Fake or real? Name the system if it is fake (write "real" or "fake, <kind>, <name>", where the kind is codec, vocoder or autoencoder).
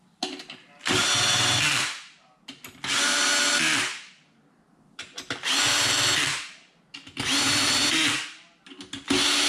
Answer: real